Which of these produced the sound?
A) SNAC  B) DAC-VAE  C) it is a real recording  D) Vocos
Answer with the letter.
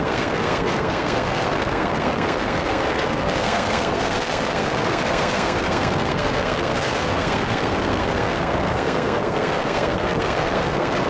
A